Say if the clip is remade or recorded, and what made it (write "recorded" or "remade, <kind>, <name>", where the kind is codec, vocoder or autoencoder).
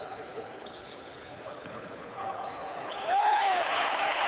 remade, codec, HILCodec